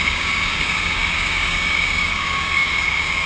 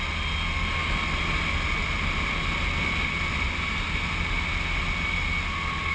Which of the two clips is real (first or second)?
second